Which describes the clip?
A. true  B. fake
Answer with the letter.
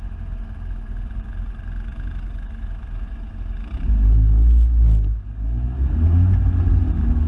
A